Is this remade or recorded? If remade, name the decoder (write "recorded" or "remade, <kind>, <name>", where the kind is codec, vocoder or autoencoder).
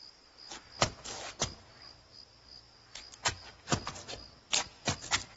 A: recorded